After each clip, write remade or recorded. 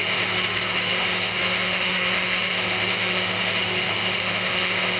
remade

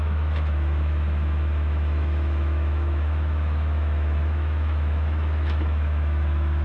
remade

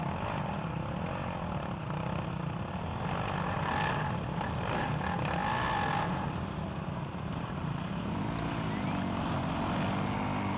recorded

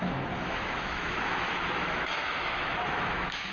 remade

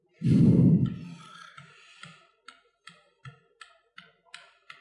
recorded